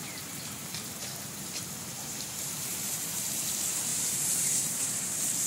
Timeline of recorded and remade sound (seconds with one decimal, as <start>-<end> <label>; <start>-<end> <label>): 0.0-3.3 remade; 3.3-3.9 recorded; 3.9-5.1 remade; 5.1-5.5 recorded